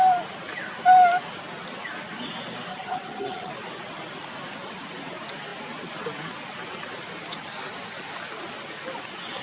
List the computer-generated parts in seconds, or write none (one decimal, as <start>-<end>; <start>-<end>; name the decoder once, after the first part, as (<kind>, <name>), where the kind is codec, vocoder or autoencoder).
2.7-3.5 (vocoder, HiFi-GAN)